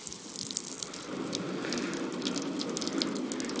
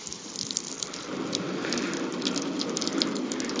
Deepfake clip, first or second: second